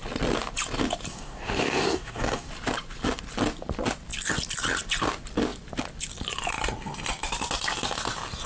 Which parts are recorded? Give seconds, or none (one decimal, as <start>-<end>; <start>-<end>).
0.0-1.1; 2.5-8.5